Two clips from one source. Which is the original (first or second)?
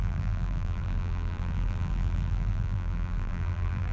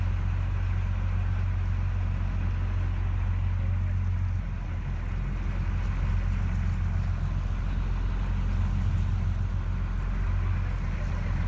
second